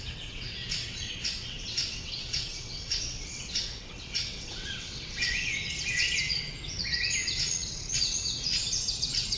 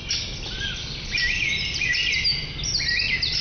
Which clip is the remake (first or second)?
first